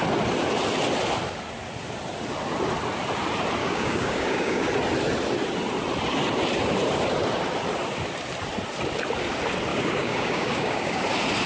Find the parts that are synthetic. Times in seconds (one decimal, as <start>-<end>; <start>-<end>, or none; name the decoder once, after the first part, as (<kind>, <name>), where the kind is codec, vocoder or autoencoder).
3.6-4.7 (codec, DAC); 9.7-11.0

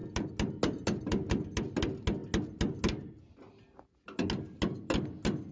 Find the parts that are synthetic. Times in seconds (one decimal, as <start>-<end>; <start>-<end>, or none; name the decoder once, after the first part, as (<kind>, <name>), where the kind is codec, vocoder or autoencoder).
none

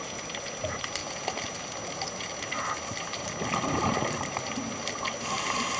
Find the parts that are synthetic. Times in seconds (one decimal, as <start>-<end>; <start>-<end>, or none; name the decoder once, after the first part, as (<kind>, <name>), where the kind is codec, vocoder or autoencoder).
none

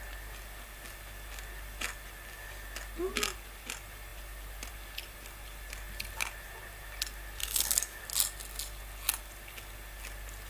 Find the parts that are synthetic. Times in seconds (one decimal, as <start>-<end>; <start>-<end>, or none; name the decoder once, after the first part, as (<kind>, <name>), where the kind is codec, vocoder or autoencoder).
7.4-8.0 (codec, DAC)

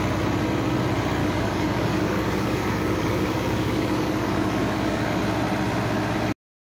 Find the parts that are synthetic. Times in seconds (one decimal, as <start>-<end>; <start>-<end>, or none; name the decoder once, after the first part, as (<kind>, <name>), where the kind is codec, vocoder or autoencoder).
1.2-5.2 (codec, DAC)

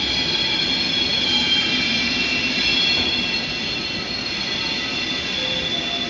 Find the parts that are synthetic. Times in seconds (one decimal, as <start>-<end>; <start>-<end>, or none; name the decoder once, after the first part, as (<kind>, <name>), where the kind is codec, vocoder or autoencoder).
none

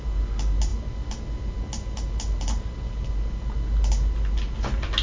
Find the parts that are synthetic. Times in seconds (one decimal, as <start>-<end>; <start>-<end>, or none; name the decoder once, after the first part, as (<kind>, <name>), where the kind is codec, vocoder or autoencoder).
none

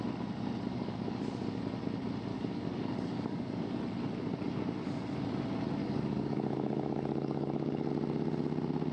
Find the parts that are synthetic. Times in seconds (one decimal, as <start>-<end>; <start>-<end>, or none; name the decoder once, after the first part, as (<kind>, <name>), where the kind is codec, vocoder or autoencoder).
0.7-1.6 (codec, DAC); 2.3-3.8; 5.8-7.9